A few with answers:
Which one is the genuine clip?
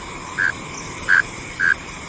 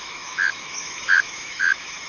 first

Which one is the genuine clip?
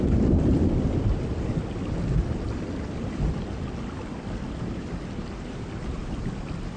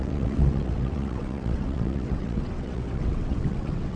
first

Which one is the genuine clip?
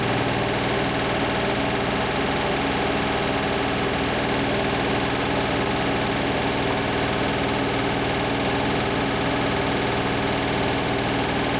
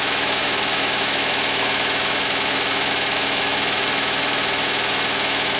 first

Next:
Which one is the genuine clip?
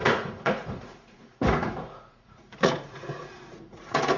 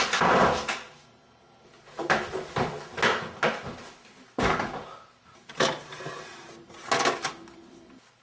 second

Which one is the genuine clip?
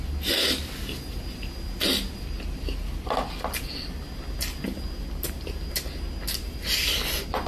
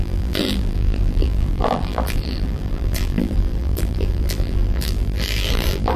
first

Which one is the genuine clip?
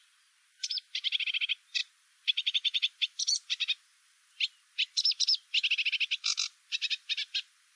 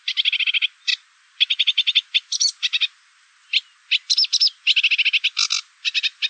second